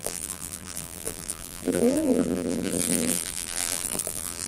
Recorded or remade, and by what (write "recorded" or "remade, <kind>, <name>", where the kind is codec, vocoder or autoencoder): remade, vocoder, BigVGAN v2